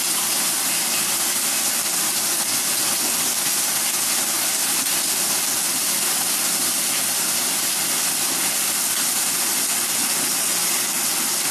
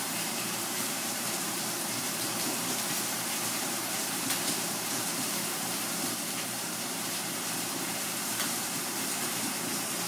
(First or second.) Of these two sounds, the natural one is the first